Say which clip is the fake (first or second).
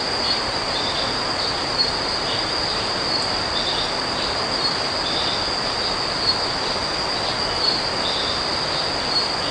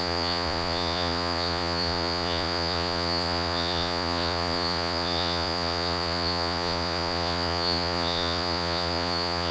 second